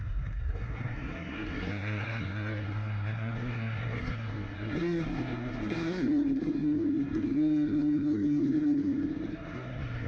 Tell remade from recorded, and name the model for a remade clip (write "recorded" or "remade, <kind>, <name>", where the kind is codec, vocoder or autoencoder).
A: remade, codec, SNAC